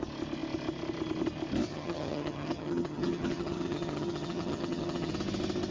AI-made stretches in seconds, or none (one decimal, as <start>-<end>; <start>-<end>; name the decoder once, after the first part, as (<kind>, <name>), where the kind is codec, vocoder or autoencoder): 1.7-5.1 (vocoder, HiFi-GAN)